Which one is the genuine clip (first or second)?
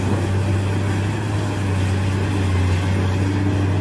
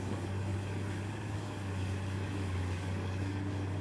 first